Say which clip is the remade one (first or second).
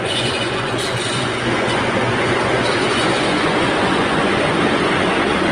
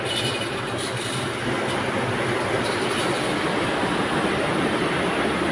first